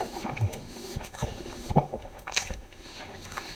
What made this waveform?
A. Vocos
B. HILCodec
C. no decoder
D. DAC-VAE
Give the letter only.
D